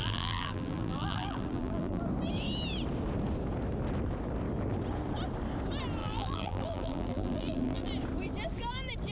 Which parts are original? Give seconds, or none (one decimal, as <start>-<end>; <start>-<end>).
2.0-6.0; 7.9-9.1